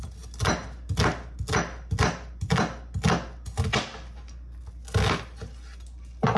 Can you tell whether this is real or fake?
real